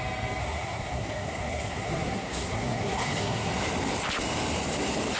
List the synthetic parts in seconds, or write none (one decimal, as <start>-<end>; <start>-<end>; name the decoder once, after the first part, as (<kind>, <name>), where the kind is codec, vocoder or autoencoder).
0.4-3.5 (codec, SNAC)